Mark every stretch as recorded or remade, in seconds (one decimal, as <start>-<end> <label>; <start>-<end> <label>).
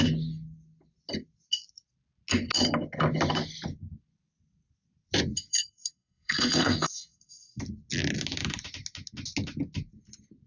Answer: 0.0-5.5 recorded; 5.5-7.6 remade; 7.6-10.5 recorded